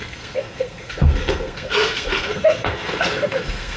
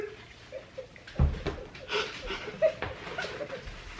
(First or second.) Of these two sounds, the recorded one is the second